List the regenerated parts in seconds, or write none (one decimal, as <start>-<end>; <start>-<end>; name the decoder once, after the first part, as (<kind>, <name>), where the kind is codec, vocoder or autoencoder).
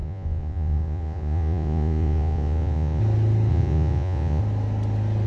0.0-3.0 (vocoder, Vocos); 3.5-4.4